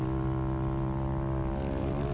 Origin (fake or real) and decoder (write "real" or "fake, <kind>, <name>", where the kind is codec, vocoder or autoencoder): real